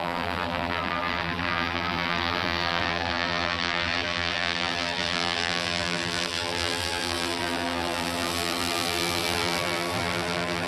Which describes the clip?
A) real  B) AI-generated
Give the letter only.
B